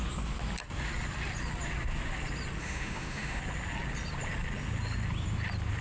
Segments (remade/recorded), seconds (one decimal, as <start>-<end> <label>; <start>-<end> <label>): 0.0-2.6 recorded; 2.6-3.4 remade; 3.4-5.8 recorded